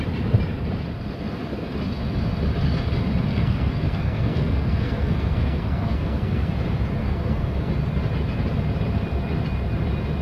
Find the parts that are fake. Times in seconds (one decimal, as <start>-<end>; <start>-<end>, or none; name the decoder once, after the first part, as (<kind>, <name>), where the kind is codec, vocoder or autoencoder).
3.3-6.5 (codec, SNAC); 7.0-7.7

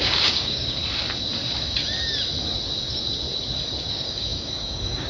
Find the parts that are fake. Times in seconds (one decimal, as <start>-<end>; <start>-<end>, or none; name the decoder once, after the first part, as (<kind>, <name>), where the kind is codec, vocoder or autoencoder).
0.0-0.8 (codec, DAC); 3.9-5.1

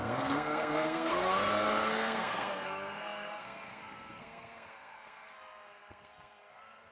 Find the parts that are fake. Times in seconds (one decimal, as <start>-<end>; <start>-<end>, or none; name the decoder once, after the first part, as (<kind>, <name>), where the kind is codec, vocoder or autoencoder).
0.0-6.9 (codec, SNAC)

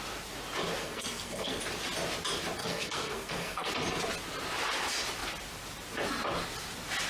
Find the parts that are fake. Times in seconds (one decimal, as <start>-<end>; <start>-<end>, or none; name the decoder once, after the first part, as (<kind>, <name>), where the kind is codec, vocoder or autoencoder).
0.8-1.6 (codec, SNAC); 2.6-3.7

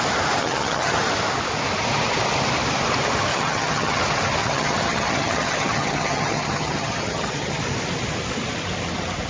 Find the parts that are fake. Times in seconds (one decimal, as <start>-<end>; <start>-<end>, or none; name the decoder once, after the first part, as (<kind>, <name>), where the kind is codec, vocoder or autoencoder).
0.4-0.9 (vocoder, HiFi-GAN); 3.3-4.0; 4.4-7.6

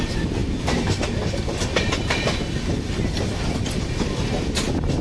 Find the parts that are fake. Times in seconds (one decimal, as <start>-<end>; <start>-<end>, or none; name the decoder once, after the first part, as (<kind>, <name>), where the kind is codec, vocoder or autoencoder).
none

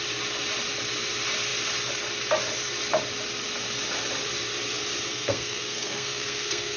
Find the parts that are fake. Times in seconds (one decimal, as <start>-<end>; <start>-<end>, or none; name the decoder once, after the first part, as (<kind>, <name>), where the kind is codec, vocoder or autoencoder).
5.1-6.8 (codec, SNAC)